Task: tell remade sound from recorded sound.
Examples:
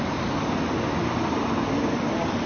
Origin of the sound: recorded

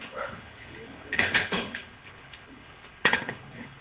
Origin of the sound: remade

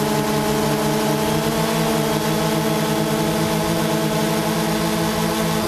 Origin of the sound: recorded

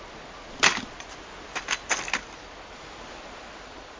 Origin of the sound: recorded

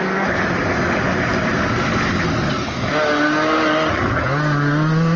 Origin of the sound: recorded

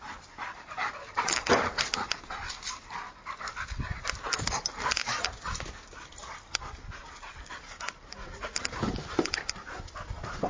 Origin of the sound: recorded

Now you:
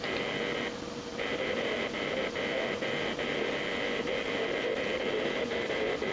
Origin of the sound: recorded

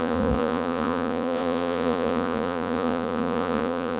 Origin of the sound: remade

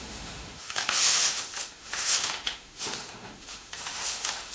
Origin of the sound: remade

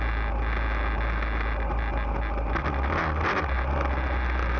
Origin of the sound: recorded